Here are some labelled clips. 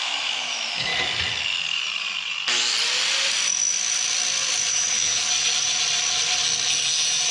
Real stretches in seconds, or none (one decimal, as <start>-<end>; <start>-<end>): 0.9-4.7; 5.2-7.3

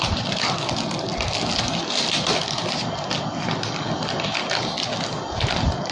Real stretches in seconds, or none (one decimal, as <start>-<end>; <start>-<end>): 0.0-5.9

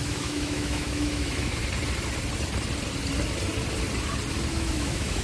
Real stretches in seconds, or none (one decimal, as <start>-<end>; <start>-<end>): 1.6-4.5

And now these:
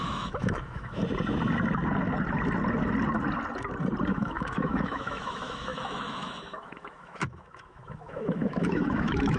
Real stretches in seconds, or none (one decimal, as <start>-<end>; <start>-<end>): 1.0-4.1

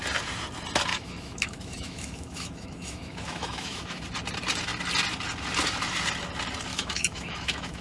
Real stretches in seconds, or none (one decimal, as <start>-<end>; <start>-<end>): 0.0-0.9; 4.0-6.7

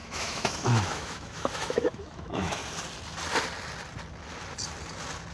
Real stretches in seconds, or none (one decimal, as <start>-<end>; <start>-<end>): 2.6-5.3